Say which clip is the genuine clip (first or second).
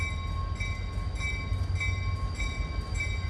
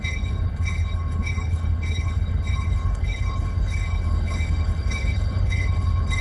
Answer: first